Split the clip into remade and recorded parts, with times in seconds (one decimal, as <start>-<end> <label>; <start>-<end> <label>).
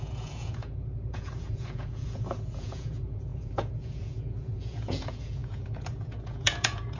0.0-7.0 remade